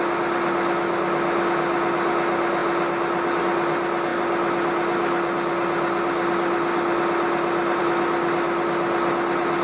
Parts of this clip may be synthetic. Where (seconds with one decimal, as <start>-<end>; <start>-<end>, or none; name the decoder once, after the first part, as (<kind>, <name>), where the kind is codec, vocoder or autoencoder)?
none